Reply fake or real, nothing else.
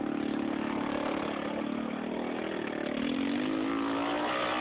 real